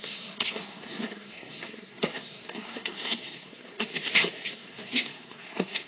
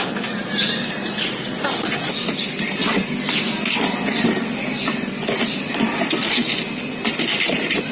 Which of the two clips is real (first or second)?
second